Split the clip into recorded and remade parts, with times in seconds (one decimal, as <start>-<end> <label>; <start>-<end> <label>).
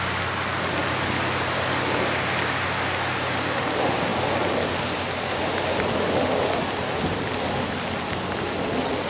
0.0-9.1 recorded